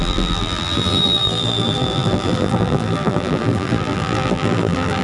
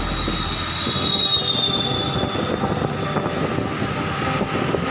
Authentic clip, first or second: second